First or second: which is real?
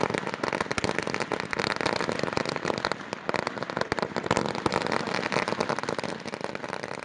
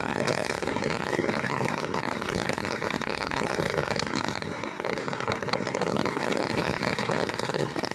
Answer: first